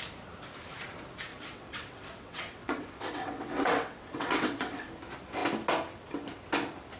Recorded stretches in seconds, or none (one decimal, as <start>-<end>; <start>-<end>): 0.0-1.3; 4.9-7.0